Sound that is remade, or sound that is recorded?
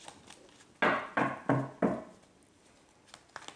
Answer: recorded